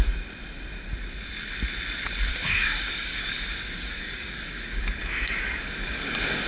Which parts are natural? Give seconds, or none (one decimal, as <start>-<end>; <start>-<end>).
0.0-2.3